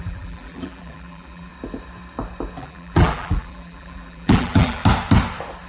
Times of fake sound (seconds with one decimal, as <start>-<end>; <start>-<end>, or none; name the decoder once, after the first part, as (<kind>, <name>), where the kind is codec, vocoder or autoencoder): 0.0-1.5 (vocoder, BigVGAN v2); 2.6-4.8